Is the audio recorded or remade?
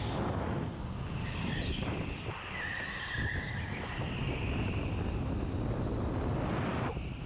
recorded